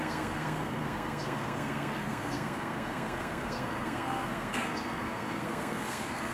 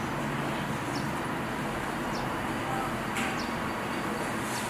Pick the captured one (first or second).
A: second